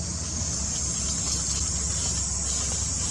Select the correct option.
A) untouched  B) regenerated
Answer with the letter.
A